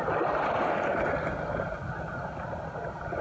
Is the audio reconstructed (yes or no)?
no